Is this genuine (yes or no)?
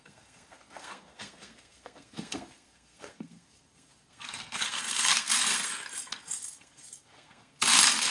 no